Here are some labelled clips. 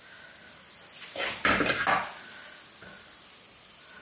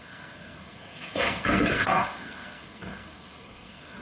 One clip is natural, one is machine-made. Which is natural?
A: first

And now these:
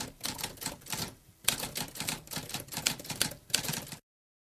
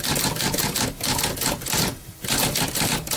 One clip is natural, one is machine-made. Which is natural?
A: second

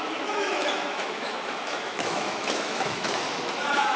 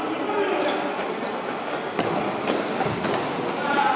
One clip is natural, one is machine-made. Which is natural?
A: second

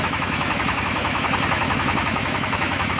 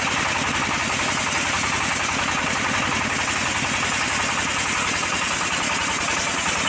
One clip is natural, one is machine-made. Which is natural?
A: second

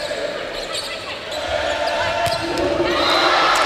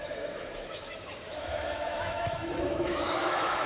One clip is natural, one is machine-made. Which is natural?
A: first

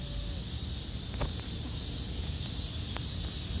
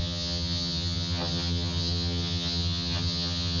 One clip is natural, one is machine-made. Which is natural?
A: first